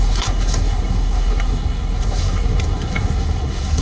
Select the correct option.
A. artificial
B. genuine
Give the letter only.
A